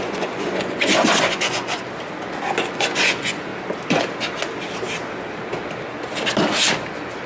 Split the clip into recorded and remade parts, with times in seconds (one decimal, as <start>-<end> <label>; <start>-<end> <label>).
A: 0.0-1.8 remade; 1.8-2.6 recorded; 2.6-3.5 remade; 3.5-7.3 recorded